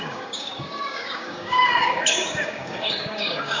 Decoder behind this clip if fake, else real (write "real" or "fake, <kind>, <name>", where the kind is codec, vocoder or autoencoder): fake, codec, DAC